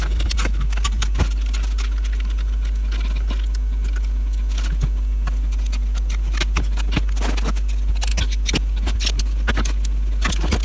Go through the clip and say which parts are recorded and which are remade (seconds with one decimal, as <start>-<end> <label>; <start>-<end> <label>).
0.0-10.6 recorded

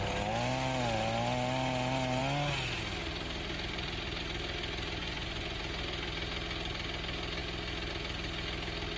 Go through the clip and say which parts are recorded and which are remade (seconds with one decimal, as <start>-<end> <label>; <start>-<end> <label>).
0.0-5.0 recorded; 5.0-5.6 remade; 5.6-9.0 recorded